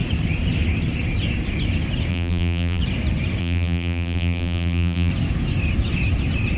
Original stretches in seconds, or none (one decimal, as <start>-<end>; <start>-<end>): 0.0-2.1; 2.8-3.4; 5.1-6.6